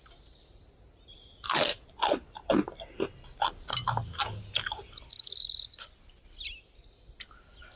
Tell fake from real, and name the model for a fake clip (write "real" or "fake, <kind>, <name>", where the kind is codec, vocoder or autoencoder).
real